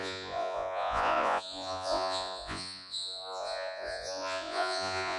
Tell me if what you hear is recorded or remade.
remade